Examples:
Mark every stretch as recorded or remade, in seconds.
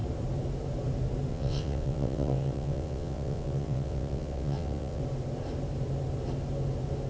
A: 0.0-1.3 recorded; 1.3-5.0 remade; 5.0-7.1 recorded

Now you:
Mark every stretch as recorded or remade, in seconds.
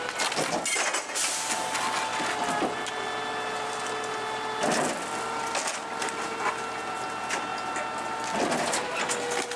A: 0.0-9.6 recorded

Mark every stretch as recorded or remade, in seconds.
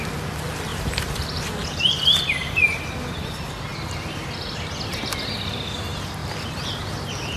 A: 0.0-0.7 recorded; 0.7-2.8 remade; 2.8-7.4 recorded